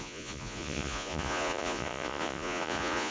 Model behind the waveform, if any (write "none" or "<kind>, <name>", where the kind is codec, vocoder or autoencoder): vocoder, Vocos